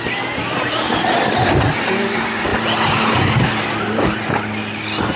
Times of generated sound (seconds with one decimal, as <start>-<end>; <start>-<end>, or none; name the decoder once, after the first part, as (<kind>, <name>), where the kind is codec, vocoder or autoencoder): none